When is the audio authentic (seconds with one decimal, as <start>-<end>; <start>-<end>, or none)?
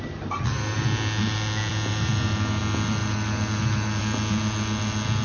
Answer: 0.0-1.7; 2.6-3.0; 4.0-5.2